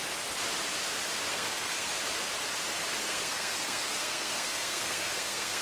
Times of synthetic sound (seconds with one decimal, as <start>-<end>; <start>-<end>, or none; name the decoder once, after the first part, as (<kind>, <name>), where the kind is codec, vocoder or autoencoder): 1.3-2.0 (codec, SNAC); 3.0-5.6